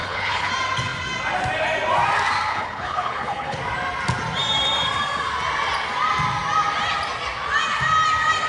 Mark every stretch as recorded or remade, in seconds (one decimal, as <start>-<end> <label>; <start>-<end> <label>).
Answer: 0.0-0.5 remade; 0.5-2.5 recorded; 2.5-3.6 remade; 3.6-8.5 recorded